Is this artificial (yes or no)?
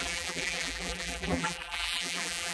yes